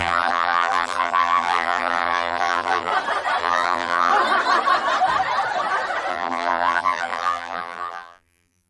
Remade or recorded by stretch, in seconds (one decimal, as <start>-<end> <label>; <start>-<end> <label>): 0.0-2.9 remade; 2.9-3.4 recorded; 3.4-4.1 remade; 4.1-6.1 recorded; 6.1-8.7 remade